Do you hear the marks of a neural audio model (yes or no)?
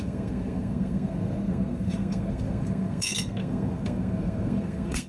yes